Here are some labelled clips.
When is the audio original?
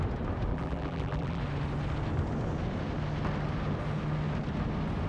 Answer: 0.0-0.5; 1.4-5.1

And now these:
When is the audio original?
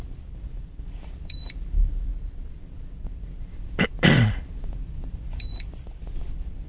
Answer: 2.1-2.6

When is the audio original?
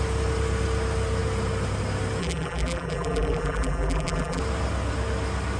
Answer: 0.0-2.2; 4.4-5.6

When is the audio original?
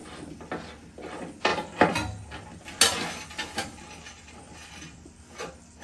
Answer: 0.0-5.8